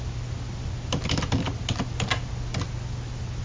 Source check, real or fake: real